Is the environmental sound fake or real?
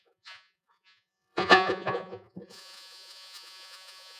fake